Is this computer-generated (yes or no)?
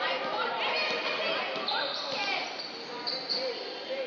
no